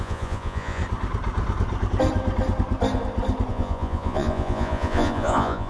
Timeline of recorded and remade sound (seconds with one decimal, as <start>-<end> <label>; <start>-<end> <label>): 0.0-0.8 remade; 0.8-3.5 recorded; 3.5-5.7 remade